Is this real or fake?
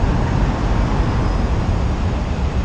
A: real